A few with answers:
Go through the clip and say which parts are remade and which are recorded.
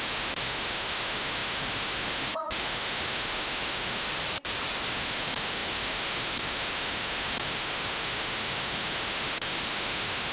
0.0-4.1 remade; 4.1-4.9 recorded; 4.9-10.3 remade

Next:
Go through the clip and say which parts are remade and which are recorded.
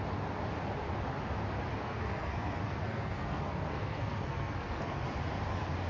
0.0-1.8 recorded; 1.8-5.1 remade; 5.1-5.9 recorded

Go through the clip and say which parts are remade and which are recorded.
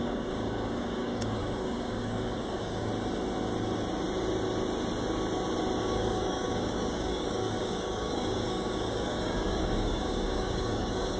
0.0-2.9 remade; 2.9-5.8 recorded; 5.8-11.2 remade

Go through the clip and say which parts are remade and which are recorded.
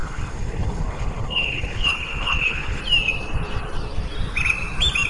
0.0-2.8 remade; 2.8-5.1 recorded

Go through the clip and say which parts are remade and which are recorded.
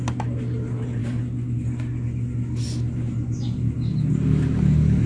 0.0-5.1 recorded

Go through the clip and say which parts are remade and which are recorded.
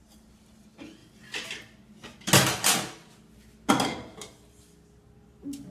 0.0-5.7 recorded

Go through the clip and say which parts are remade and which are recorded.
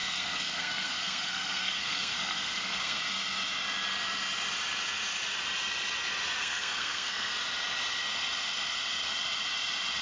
0.0-3.0 remade; 3.0-6.4 recorded; 6.4-7.3 remade; 7.3-10.0 recorded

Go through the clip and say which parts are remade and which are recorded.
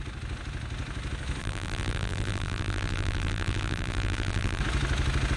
0.0-1.4 recorded; 1.4-4.6 remade; 4.6-5.4 recorded